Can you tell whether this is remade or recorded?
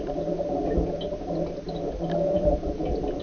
recorded